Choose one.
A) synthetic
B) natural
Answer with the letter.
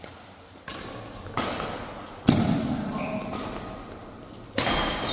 B